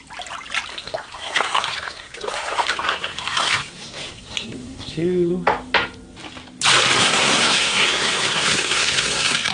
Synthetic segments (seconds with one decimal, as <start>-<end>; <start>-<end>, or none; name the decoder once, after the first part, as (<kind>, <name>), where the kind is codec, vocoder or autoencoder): 0.7-5.3 (codec, SNAC); 7.0-9.5